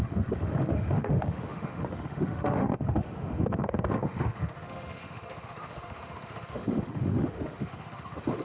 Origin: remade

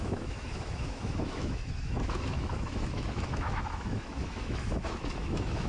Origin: remade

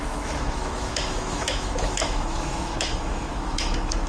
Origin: remade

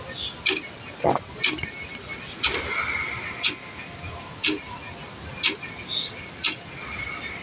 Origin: recorded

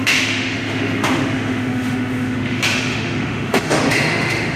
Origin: remade